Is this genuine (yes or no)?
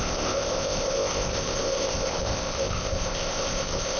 no